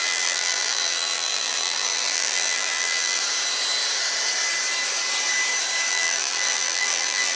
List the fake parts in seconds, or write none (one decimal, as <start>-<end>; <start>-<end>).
0.0-3.2; 5.9-7.4